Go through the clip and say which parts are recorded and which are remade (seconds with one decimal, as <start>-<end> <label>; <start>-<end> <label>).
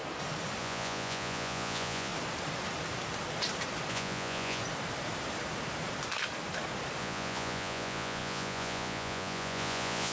0.0-0.6 recorded; 0.6-2.1 remade; 2.1-3.9 recorded; 3.9-4.6 remade; 4.6-7.0 recorded; 7.0-10.1 remade